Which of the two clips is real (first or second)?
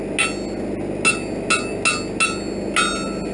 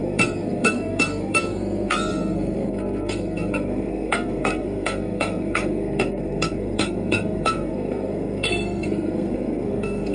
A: first